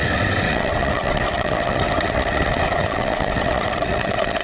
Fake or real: fake